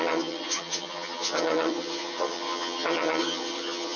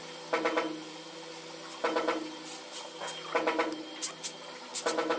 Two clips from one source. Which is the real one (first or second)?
second